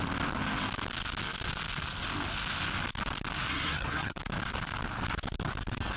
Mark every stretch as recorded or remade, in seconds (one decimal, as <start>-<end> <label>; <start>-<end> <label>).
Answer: 0.0-3.5 recorded; 3.5-4.2 remade; 4.2-6.0 recorded